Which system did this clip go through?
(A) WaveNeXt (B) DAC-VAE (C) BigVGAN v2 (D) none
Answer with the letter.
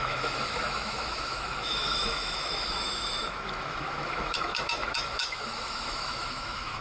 B